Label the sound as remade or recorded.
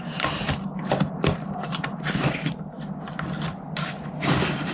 recorded